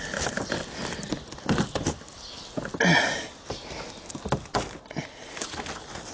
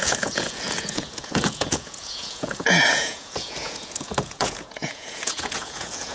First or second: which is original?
first